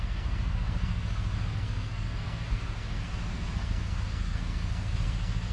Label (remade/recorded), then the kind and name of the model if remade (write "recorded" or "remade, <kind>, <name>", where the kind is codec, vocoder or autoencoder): remade, codec, SNAC